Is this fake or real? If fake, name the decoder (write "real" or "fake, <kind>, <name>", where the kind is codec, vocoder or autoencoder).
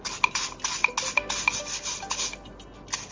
real